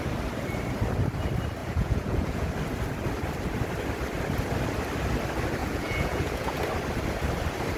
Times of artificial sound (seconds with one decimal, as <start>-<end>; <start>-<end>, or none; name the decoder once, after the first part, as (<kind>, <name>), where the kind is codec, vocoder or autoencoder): 1.6-2.5 (vocoder, Vocos); 5.6-6.6